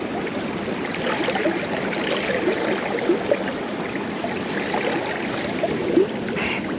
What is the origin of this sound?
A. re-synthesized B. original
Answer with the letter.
B